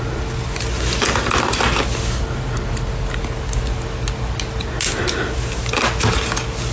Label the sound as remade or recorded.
recorded